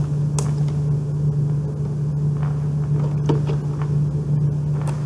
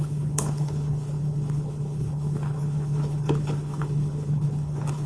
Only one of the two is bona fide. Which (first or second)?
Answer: first